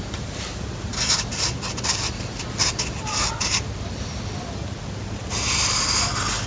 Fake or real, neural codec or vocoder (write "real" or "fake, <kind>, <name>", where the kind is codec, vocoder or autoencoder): real